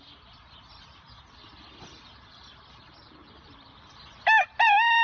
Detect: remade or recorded recorded